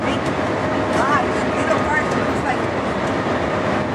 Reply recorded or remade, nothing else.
recorded